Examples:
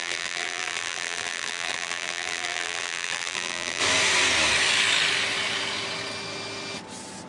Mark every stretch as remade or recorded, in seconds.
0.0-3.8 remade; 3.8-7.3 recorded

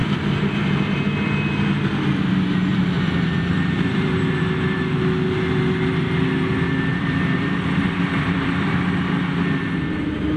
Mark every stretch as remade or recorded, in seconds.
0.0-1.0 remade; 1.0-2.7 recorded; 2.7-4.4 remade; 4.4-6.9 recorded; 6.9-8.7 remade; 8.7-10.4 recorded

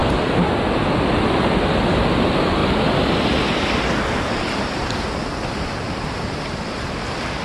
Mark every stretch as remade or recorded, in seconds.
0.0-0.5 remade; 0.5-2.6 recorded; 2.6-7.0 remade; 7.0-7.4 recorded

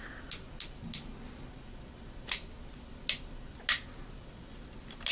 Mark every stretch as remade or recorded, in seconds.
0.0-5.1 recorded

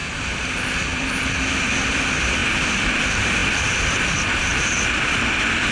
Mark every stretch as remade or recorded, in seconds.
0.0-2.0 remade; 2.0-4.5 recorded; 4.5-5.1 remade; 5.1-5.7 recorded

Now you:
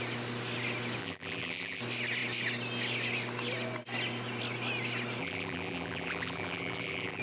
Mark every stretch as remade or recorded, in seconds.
0.0-1.0 recorded; 1.0-1.8 remade; 1.8-5.2 recorded; 5.2-7.2 remade